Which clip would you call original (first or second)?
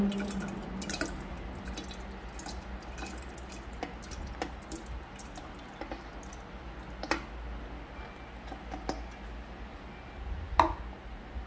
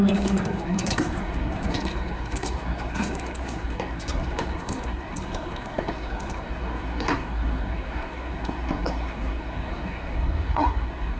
first